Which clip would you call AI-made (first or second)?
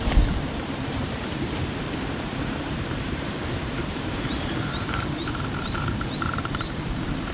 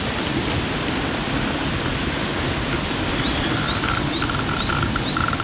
first